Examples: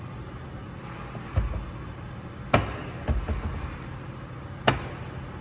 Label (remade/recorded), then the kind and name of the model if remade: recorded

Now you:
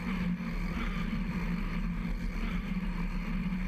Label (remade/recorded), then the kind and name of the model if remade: recorded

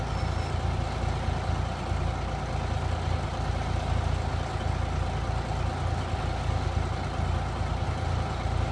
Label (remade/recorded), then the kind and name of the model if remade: recorded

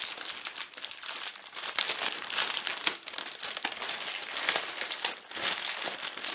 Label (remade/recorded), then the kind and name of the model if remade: recorded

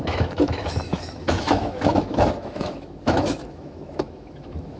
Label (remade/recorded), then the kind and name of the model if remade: remade, autoencoder, DAC-VAE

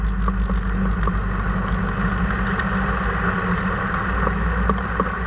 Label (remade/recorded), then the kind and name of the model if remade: recorded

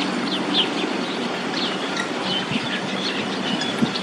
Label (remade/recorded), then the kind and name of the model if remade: recorded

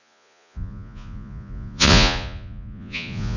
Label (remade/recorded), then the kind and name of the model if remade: remade, vocoder, Vocos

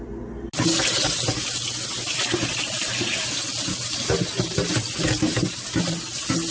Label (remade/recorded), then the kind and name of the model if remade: recorded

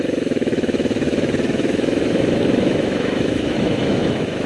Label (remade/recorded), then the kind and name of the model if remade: remade, autoencoder, DAC-VAE